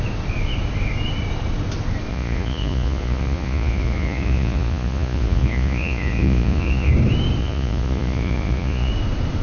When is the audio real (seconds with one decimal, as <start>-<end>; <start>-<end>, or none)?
0.0-2.1; 6.9-7.4; 8.9-9.4